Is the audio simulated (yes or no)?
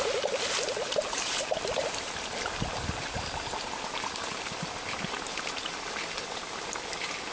no